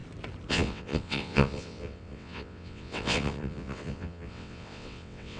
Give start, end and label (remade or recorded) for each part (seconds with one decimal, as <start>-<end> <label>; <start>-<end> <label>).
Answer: 0.0-0.5 recorded; 0.5-5.4 remade